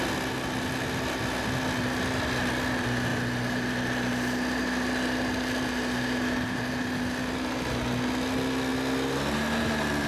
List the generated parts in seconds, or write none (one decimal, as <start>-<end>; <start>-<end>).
none